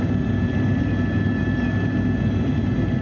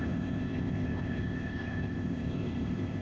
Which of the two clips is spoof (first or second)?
second